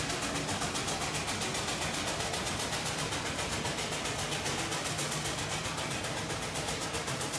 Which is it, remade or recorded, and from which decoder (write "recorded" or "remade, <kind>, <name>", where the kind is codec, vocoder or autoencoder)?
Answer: recorded